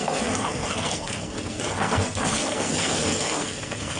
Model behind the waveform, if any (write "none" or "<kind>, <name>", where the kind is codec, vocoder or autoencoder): codec, SNAC